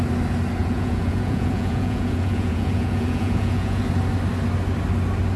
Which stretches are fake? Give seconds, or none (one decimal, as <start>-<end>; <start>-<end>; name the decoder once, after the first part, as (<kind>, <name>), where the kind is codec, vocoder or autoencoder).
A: 0.6-3.8 (vocoder, Vocos)